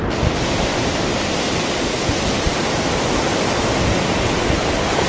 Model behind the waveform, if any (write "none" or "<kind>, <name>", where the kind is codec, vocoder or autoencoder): none